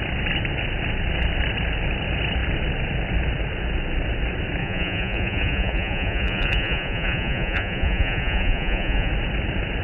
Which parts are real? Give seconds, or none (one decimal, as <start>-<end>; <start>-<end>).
0.0-4.6; 9.1-9.8